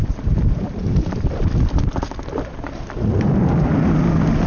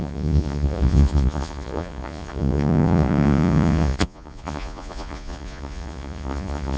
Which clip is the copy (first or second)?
second